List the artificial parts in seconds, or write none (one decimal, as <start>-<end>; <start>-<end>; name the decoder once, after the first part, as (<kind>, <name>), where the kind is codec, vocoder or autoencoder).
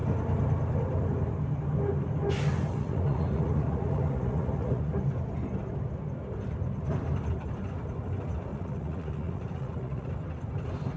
2.7-4.9 (vocoder, Vocos); 8.5-10.1